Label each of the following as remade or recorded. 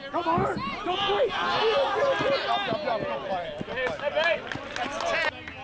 recorded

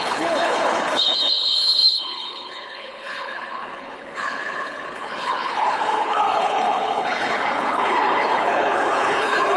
remade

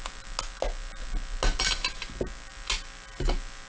recorded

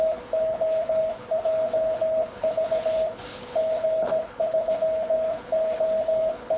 remade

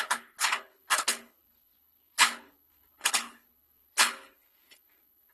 remade